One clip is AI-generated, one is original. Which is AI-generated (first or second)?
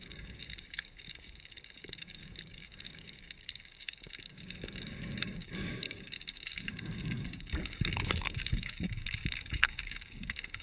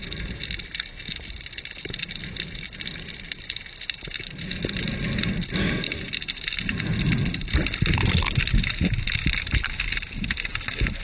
first